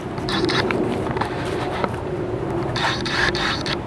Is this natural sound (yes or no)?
no